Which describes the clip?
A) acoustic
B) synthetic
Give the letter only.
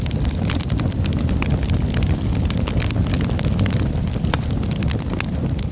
A